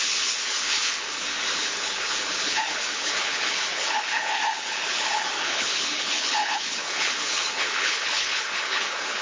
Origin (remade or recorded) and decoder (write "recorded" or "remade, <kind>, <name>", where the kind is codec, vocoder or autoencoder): remade, codec, HILCodec